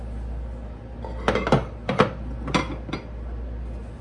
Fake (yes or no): no